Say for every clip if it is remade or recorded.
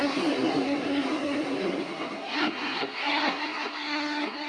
remade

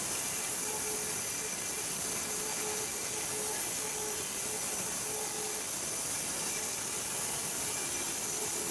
recorded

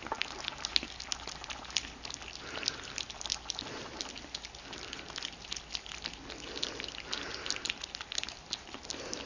recorded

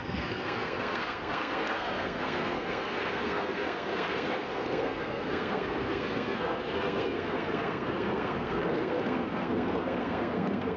remade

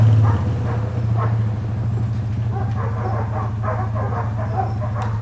recorded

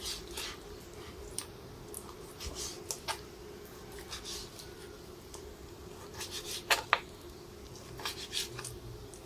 recorded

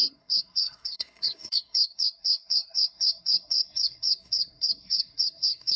remade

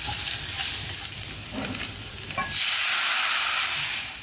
recorded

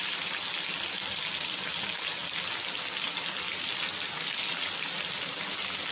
recorded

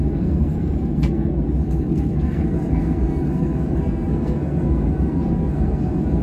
remade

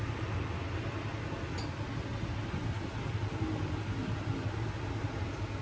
recorded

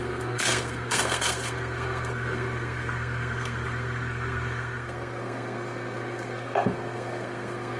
remade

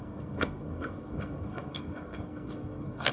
remade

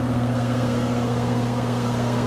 remade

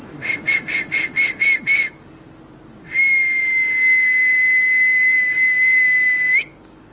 recorded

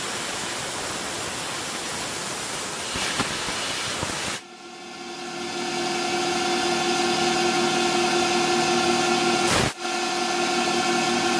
recorded